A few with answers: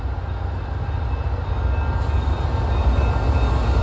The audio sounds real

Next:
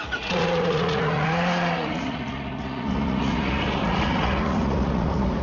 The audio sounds fake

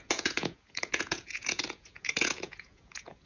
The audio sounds fake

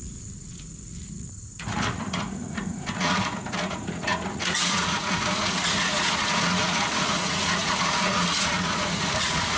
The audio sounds fake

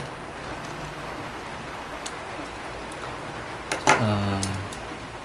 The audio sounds real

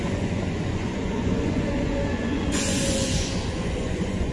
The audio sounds fake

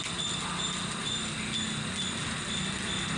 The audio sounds real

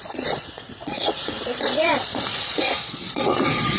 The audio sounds fake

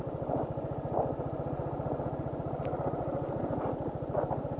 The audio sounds real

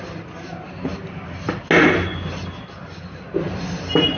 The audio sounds real